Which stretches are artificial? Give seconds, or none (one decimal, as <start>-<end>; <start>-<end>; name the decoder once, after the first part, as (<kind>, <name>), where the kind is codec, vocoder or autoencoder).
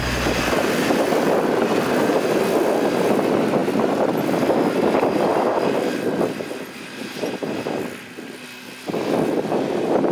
none